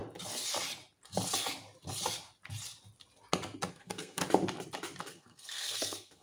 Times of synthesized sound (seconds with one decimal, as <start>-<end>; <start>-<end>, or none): 3.7-4.2; 5.0-6.2